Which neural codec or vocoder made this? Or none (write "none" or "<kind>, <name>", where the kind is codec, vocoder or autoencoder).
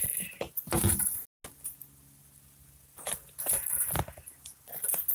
none